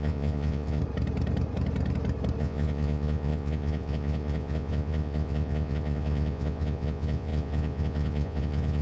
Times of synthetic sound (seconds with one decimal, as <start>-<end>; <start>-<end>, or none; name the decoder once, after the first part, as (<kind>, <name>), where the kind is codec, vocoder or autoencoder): 0.0-0.8 (vocoder, Vocos); 2.4-8.8